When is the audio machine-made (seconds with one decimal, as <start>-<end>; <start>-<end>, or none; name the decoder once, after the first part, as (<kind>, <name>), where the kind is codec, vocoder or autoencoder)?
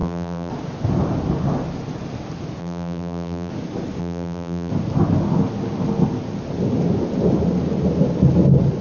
0.0-0.5 (vocoder, BigVGAN v2); 2.6-3.5; 4.0-4.7